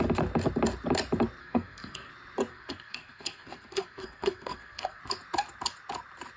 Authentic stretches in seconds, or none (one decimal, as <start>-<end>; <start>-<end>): 0.0-1.4; 2.1-2.5; 5.0-6.4